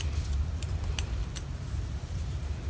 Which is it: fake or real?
real